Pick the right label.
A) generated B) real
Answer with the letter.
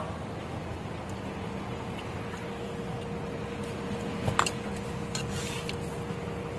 B